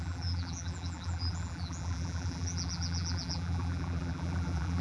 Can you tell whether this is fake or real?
fake